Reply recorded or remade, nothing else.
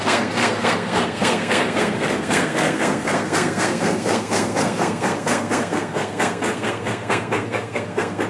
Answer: remade